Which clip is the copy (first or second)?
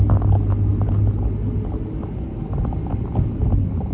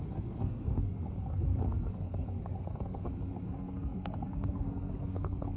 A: second